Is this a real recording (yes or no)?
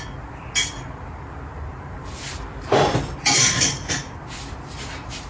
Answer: yes